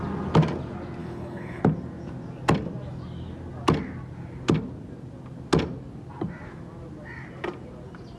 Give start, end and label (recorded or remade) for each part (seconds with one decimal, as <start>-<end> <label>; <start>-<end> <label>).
0.0-1.0 recorded; 1.0-1.6 remade; 1.6-8.2 recorded